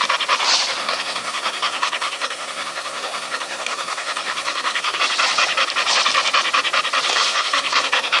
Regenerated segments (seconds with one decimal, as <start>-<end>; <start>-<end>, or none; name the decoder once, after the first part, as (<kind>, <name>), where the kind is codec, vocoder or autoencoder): 0.8-5.0 (codec, SNAC); 7.1-8.2